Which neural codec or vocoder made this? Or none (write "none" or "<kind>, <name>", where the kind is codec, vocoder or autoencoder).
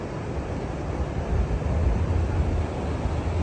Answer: none